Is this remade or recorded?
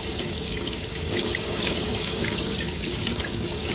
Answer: remade